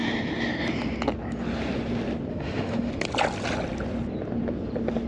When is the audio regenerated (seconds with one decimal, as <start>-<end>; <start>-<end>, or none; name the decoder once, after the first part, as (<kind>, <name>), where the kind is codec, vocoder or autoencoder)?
2.3-2.9 (autoencoder, DAC-VAE)